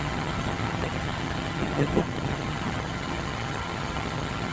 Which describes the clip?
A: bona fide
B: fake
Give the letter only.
B